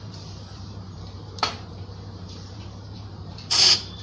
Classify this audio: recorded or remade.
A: remade